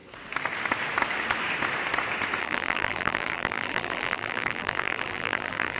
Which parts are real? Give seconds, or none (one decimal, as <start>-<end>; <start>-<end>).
0.0-2.4